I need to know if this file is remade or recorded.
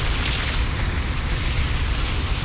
recorded